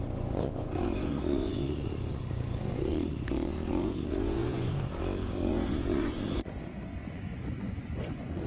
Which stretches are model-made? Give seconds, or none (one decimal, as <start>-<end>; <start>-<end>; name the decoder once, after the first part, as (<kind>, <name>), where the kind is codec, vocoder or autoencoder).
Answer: 0.0-8.5 (vocoder, Vocos)